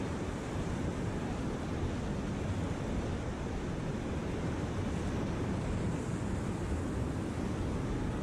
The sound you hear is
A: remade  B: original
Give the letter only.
B